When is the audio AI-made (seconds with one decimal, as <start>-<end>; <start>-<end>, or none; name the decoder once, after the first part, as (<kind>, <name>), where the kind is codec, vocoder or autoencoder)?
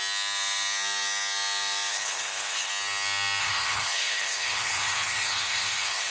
1.9-2.7 (codec, HILCodec); 3.4-6.1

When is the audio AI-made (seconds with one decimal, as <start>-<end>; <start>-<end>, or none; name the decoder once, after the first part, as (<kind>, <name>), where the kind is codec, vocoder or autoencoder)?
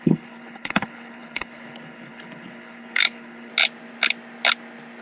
0.0-3.5 (codec, HILCodec)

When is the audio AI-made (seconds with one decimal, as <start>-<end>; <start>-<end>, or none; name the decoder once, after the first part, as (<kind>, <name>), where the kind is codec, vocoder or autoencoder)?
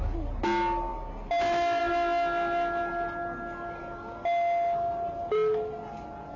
none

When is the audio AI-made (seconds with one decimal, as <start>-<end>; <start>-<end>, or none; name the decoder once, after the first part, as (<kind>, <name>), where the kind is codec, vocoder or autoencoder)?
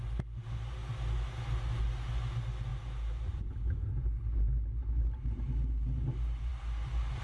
none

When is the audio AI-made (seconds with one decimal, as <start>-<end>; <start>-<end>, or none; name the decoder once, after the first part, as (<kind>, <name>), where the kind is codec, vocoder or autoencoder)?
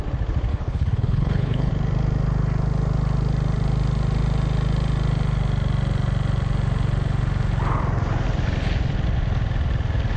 0.5-1.7 (codec, HILCodec)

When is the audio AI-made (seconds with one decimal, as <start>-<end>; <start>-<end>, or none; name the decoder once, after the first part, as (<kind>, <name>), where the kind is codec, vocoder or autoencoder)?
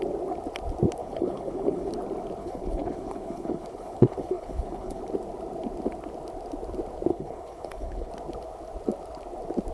1.0-1.9 (codec, HILCodec); 2.4-5.0; 7.1-8.1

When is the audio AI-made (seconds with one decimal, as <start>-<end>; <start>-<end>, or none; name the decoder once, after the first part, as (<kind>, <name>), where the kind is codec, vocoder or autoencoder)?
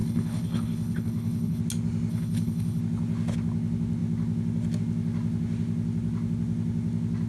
0.0-1.6 (codec, HILCodec); 2.1-2.8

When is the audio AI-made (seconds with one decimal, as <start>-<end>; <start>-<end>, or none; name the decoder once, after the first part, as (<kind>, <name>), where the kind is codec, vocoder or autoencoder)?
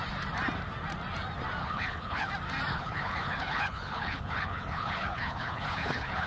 1.6-2.3 (codec, HILCodec); 2.7-6.3